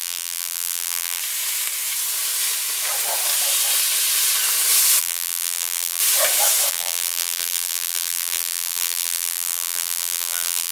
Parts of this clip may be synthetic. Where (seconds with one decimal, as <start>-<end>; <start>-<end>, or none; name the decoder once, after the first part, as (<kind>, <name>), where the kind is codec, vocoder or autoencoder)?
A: 0.0-1.2 (vocoder, BigVGAN v2); 5.0-6.0; 6.7-10.7